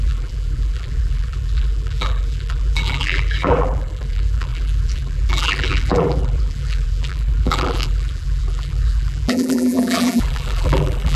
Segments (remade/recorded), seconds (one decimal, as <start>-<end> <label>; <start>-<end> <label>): 0.0-11.2 remade